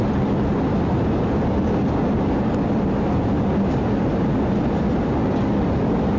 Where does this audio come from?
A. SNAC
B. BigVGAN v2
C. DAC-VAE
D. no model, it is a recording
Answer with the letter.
D